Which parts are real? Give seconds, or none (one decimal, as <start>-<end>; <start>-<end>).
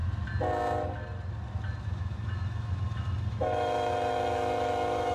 0.0-1.8